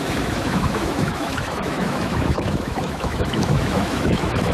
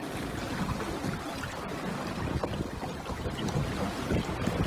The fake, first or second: first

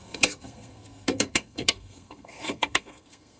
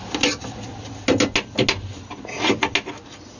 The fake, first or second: first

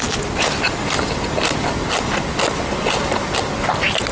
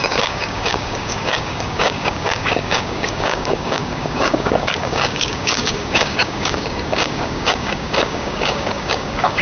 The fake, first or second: second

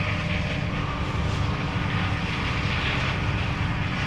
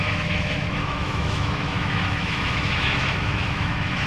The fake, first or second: second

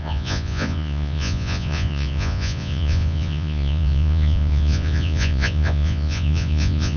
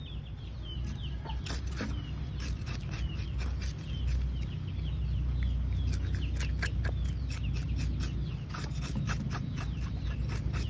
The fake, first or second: first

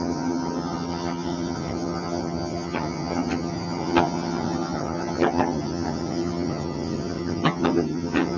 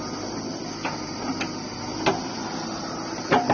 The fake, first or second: first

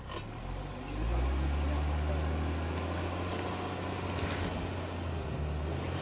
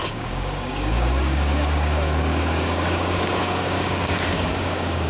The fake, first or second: second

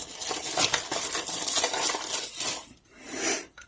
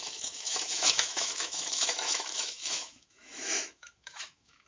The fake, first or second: second